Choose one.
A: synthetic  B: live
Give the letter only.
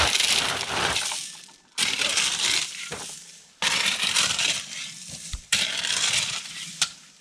A